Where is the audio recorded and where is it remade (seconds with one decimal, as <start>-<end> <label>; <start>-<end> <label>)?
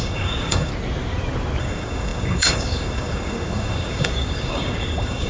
0.0-0.7 remade; 0.7-1.6 recorded; 1.6-5.3 remade